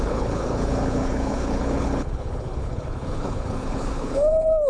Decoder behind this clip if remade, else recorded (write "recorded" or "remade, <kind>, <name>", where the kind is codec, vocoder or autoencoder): remade, codec, HILCodec